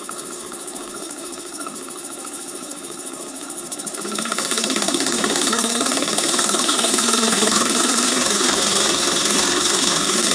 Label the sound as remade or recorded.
remade